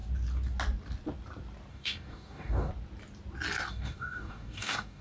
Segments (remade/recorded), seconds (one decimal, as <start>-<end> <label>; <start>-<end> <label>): 0.0-1.7 recorded; 1.7-2.7 remade; 2.7-3.7 recorded; 3.7-5.0 remade